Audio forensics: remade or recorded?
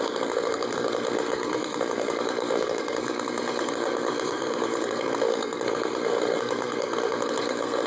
remade